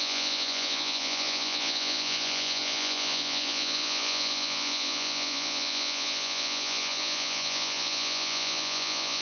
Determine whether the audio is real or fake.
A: fake